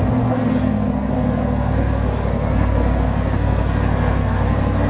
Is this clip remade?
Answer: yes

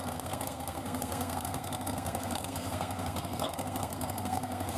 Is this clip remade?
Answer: yes